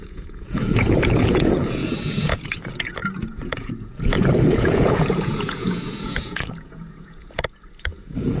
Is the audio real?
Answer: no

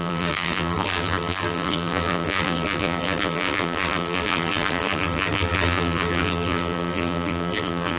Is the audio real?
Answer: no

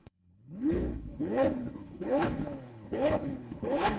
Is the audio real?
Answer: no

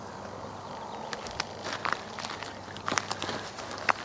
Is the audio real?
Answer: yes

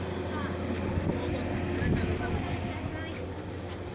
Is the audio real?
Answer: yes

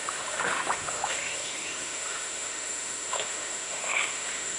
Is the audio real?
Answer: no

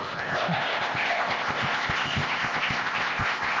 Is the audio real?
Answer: no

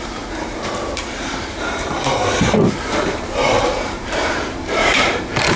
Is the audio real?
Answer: no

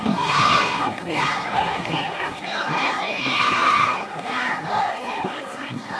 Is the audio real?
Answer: no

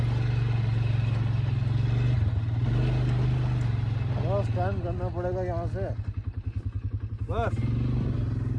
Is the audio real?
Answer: yes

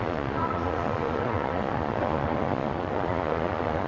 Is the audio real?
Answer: no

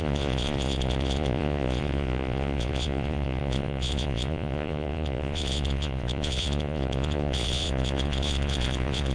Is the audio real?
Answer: no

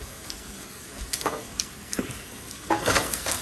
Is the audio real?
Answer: no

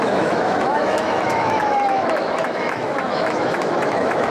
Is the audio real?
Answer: no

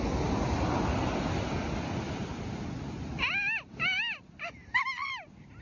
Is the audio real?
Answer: yes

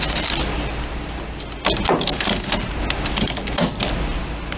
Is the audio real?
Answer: yes